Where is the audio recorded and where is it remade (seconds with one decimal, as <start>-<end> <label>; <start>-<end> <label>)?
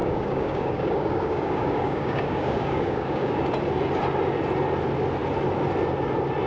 0.0-3.4 remade; 3.4-6.5 recorded